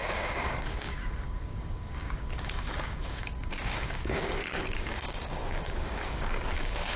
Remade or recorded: remade